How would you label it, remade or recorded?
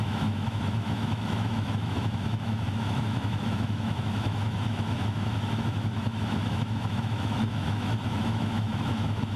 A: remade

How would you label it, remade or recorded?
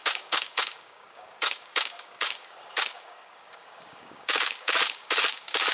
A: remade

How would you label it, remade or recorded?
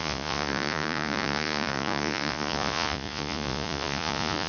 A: remade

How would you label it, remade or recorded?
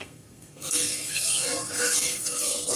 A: remade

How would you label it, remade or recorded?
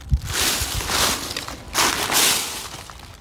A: recorded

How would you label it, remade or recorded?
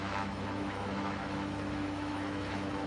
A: remade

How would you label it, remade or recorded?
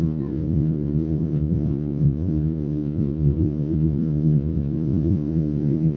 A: remade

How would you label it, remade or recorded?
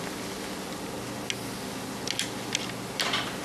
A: recorded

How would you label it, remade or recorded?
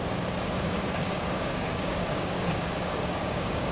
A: remade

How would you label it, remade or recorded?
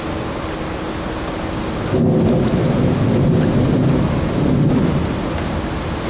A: recorded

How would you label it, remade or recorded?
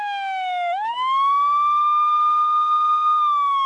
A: remade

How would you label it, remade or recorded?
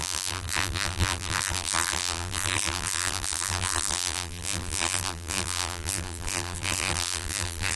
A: remade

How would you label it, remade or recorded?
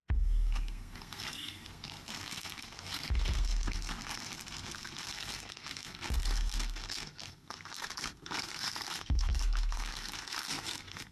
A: remade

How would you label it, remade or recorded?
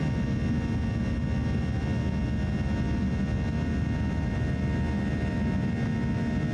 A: recorded